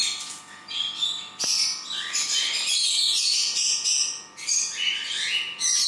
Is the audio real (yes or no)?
yes